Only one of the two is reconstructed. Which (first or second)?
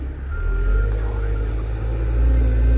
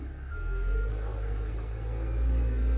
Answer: second